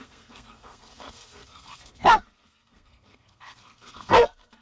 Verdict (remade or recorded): remade